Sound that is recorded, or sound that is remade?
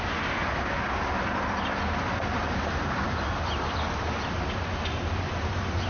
recorded